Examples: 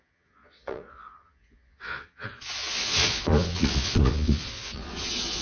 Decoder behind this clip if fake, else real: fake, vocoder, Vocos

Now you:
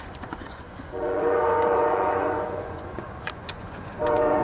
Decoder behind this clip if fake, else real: fake, vocoder, Vocos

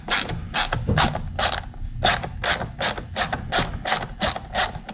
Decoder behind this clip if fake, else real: real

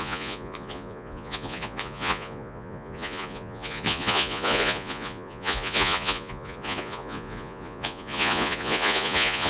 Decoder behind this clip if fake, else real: fake, vocoder, Vocos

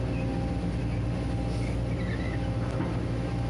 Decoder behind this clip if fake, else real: real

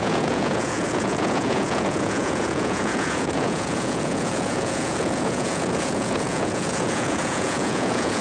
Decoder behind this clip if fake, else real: fake, vocoder, Vocos